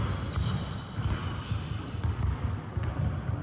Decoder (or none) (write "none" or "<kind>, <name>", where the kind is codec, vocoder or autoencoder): none